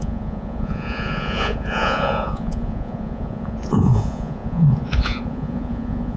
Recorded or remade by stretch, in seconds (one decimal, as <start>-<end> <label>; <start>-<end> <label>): 0.0-6.2 remade